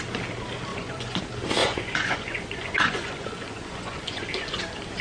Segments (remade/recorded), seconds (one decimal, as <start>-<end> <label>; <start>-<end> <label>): 0.0-0.7 recorded; 0.7-1.2 remade; 1.2-1.6 recorded; 1.6-4.6 remade; 4.6-5.0 recorded